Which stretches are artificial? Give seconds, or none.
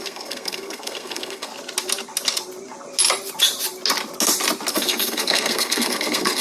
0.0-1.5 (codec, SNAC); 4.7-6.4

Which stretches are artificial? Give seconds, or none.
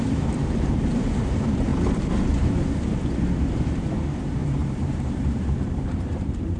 0.0-1.7 (vocoder, BigVGAN v2); 2.4-6.6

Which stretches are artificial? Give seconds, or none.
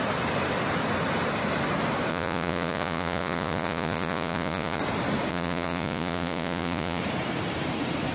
2.1-4.8 (vocoder, Vocos); 5.3-7.0